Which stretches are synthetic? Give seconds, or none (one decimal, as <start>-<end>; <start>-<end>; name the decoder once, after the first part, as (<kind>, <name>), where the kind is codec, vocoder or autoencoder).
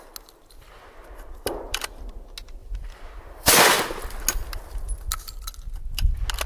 2.6-3.8 (vocoder, BigVGAN v2)